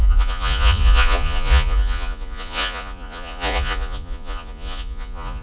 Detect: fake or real fake